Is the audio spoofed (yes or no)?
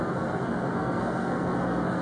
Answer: yes